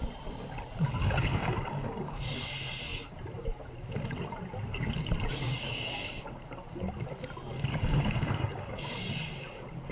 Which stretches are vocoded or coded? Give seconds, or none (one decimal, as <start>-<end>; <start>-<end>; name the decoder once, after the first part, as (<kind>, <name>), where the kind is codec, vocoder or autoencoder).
1.0-2.5 (codec, DAC); 5.3-6.2; 7.5-9.1